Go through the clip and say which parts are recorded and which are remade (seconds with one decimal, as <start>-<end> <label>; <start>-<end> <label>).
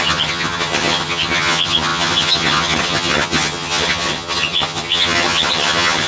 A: 0.0-6.1 remade